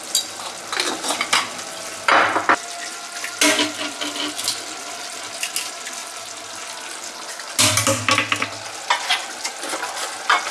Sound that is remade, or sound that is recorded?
recorded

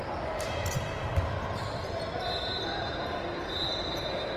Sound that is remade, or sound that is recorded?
recorded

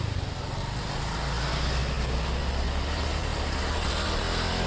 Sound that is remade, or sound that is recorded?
recorded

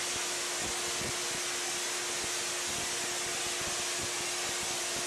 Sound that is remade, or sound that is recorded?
recorded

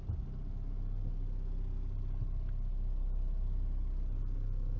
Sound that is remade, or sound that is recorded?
recorded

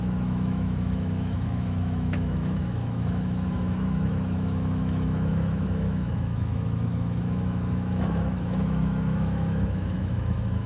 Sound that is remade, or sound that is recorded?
remade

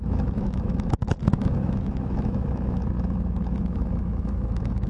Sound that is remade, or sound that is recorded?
remade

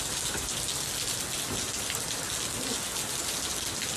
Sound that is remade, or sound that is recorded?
recorded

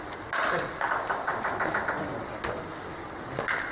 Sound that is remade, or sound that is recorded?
recorded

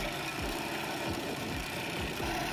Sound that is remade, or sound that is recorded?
recorded